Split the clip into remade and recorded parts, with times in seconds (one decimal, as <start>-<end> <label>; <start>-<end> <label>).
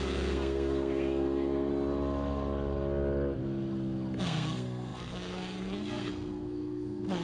0.0-1.7 remade; 1.7-4.2 recorded; 4.2-7.2 remade